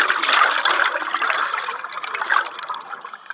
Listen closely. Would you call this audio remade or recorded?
recorded